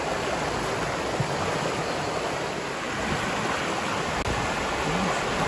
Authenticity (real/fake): real